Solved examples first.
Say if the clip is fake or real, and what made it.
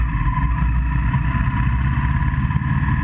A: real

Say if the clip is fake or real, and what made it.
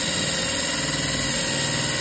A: real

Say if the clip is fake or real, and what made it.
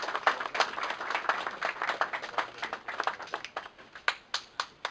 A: real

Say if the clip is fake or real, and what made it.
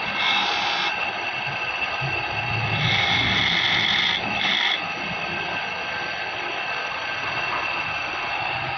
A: real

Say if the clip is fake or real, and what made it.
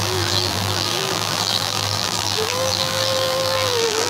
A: fake, vocoder, BigVGAN v2